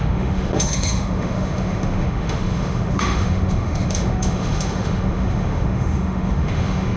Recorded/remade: remade